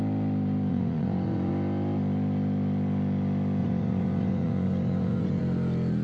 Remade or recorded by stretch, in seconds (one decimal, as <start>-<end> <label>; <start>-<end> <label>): 0.0-0.7 recorded; 0.7-1.5 remade; 1.5-3.6 recorded; 3.6-5.4 remade; 5.4-6.0 recorded